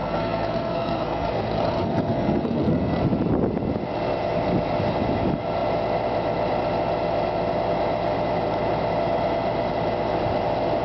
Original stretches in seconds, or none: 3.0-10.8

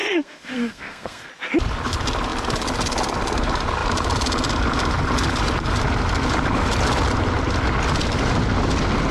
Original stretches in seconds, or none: 1.3-9.1

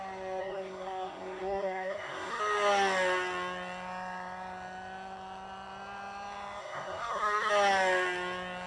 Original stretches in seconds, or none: 0.0-0.4; 2.4-6.6; 7.5-8.7

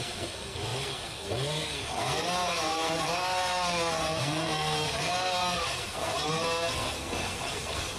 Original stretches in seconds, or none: none

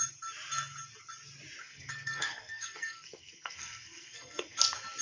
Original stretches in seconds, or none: 0.0-1.6; 4.6-5.0

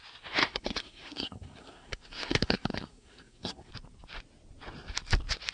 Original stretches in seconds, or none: 0.0-0.4; 3.7-5.5

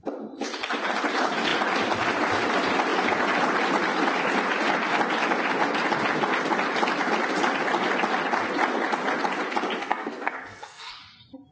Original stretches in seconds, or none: 0.0-9.8; 11.0-11.5

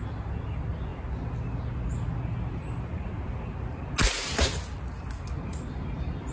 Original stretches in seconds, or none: 0.0-6.3